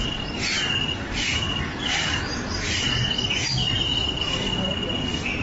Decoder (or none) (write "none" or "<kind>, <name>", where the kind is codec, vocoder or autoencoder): none